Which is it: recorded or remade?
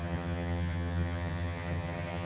remade